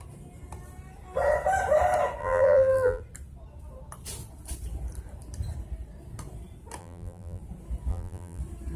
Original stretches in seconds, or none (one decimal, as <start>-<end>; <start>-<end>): 0.0-2.2; 3.0-6.8; 7.4-7.9; 8.4-8.8